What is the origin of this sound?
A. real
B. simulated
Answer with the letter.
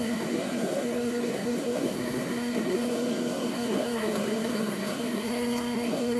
B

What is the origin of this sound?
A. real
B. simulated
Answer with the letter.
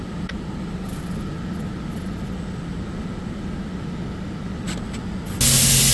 A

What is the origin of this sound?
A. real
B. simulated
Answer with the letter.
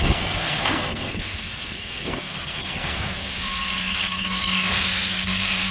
B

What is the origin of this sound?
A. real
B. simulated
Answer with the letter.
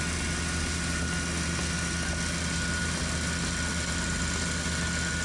A